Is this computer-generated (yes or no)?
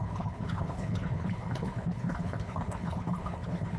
yes